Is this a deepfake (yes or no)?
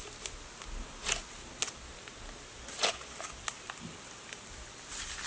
no